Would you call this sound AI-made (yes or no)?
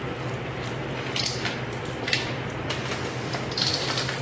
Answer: no